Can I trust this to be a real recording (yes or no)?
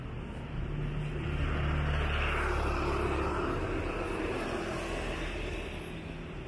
yes